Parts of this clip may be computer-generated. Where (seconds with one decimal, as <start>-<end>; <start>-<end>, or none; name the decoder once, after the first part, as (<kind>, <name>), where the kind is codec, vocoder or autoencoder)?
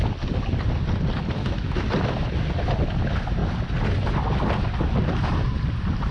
1.4-1.9 (autoencoder, DAC-VAE)